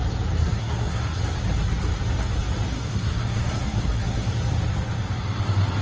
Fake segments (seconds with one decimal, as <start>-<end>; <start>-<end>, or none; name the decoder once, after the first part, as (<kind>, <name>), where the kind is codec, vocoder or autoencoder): 0.4-1.2 (codec, SNAC); 2.7-4.3